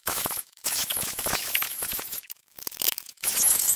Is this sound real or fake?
fake